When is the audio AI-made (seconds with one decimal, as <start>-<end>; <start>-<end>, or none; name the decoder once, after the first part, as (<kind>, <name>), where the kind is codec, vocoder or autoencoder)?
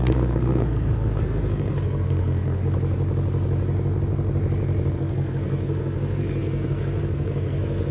0.0-2.6 (codec, SNAC); 4.9-7.9